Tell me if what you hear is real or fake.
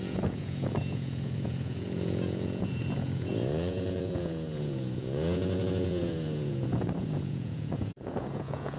fake